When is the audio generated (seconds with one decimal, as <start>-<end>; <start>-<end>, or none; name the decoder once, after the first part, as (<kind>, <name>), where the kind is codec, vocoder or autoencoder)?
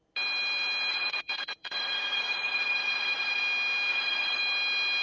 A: 0.9-3.4 (vocoder, Vocos); 3.9-4.4